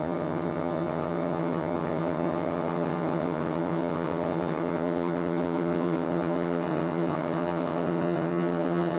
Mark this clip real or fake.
fake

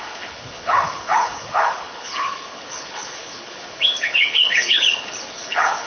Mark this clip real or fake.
fake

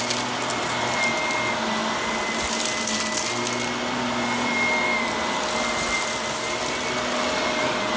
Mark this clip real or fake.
real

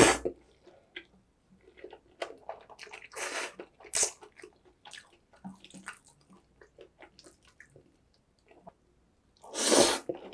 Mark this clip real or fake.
real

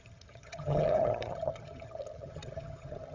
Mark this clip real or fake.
fake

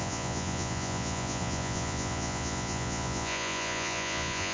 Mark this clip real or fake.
fake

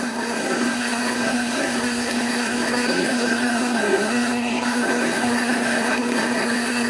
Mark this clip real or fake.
fake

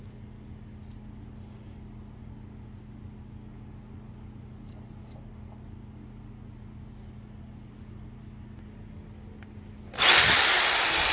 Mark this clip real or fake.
real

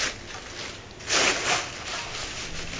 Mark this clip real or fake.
real